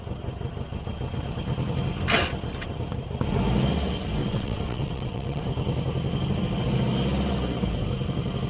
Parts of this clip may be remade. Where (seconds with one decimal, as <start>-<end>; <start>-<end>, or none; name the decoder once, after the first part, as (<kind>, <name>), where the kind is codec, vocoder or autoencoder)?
4.2-5.4 (vocoder, WaveNeXt)